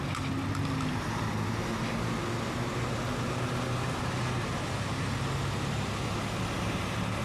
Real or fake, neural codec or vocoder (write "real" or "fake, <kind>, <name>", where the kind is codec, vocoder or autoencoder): real